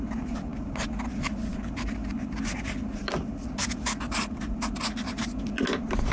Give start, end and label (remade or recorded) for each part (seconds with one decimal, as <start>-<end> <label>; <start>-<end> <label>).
0.0-6.1 recorded